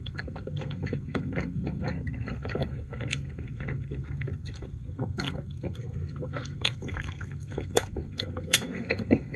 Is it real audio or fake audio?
fake